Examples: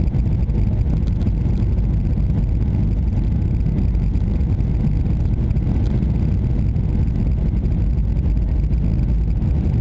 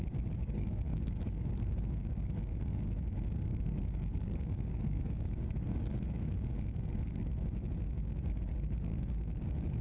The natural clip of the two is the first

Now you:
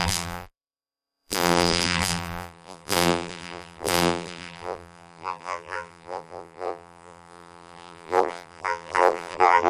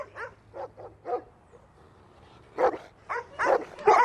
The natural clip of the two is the second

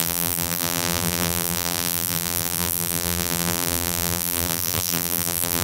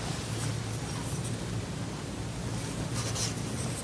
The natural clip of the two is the second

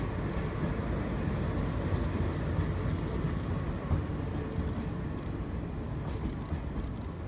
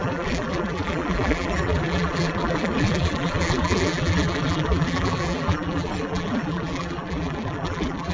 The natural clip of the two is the first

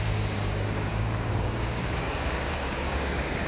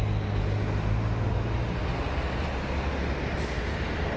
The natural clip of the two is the second